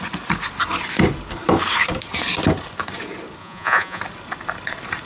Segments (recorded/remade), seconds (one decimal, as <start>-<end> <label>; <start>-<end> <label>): 0.0-3.4 recorded; 3.4-4.0 remade; 4.0-5.1 recorded